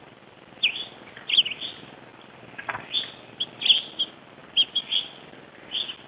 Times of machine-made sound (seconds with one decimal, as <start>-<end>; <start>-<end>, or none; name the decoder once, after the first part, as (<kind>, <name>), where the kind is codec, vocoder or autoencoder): none